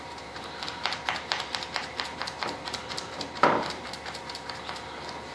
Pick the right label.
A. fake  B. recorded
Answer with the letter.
A